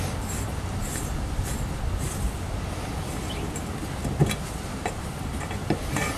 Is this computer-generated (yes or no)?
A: no